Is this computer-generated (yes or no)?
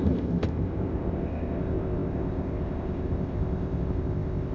yes